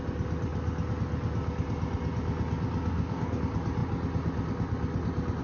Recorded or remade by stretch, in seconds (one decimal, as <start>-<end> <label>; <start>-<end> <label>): 0.0-2.9 recorded; 2.9-3.4 remade; 3.4-5.4 recorded